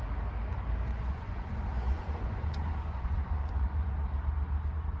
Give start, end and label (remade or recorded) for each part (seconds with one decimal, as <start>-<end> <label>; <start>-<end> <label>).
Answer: 0.0-0.9 recorded; 0.9-3.9 remade; 3.9-5.0 recorded